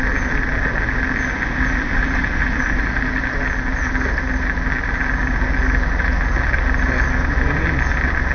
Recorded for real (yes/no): yes